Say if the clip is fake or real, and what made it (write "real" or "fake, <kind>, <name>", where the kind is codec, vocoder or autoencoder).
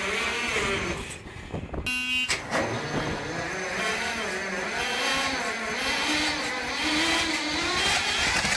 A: real